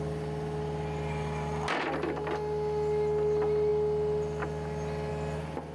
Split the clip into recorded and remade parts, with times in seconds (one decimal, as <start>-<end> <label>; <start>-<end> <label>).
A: 0.0-5.7 recorded